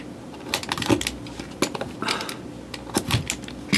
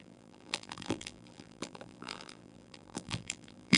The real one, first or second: first